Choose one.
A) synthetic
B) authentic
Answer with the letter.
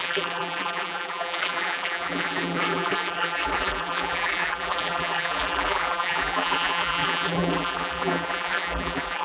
A